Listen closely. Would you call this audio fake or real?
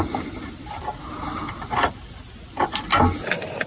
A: real